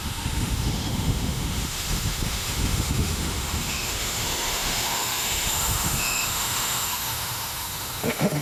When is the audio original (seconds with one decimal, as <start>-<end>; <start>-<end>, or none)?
none